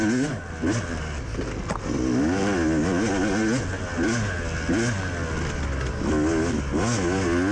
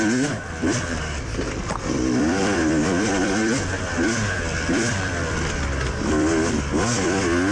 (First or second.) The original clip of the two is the first